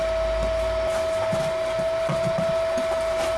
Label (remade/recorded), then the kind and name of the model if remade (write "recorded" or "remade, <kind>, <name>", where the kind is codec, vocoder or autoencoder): recorded